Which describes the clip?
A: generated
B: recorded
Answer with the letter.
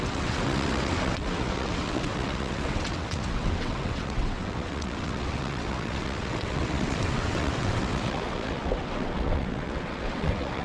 A